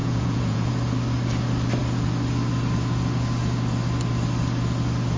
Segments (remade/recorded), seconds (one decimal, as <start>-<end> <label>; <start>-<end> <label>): 0.0-0.7 remade; 0.7-5.2 recorded